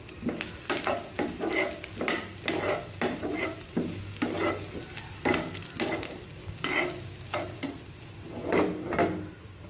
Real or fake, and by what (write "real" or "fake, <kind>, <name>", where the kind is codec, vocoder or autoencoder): real